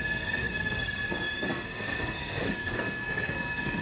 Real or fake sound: fake